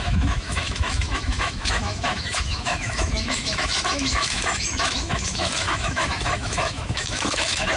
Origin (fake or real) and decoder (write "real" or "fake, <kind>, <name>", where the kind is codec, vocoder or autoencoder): fake, autoencoder, DAC-VAE